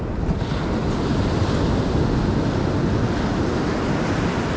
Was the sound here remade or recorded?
recorded